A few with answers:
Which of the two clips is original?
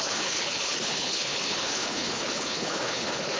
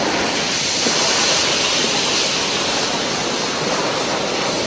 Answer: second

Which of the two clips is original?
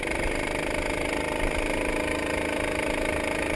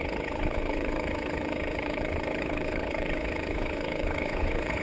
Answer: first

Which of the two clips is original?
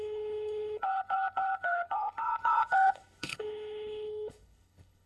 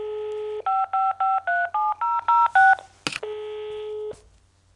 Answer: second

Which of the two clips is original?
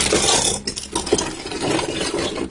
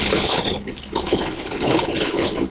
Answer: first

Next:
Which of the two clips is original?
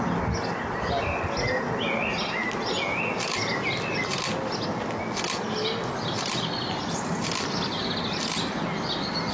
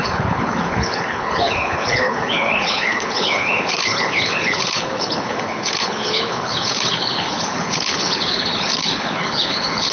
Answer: first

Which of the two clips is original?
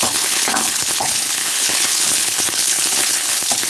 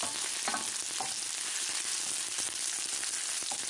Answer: second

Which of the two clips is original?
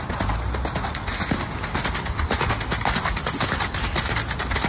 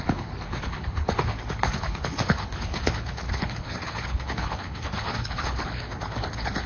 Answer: first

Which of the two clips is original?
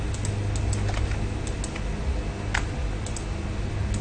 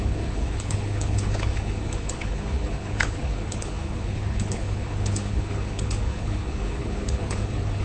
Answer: first